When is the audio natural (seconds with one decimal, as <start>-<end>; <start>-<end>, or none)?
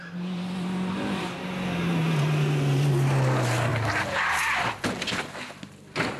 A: 0.0-3.7; 4.4-6.2